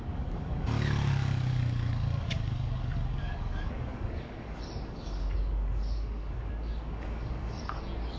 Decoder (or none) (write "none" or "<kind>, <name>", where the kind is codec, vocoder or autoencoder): codec, DAC